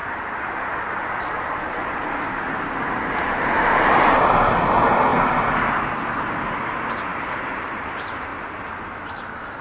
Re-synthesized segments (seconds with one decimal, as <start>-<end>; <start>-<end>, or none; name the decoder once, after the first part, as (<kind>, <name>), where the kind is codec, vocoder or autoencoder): 1.2-5.1 (vocoder, BigVGAN v2); 6.2-7.1; 7.7-8.3